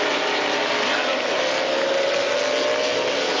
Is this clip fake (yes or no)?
no